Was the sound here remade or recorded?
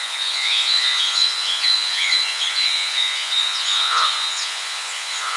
remade